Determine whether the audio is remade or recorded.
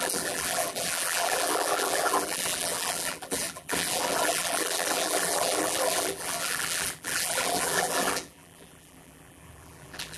remade